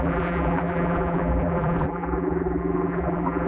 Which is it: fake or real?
fake